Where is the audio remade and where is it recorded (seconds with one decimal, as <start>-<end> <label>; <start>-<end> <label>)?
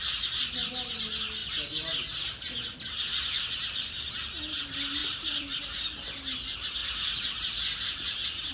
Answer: 0.0-5.0 recorded; 5.0-5.6 remade; 5.6-6.8 recorded; 6.8-8.5 remade